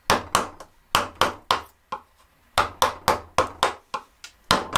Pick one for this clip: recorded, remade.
recorded